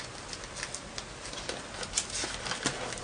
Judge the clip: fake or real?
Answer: real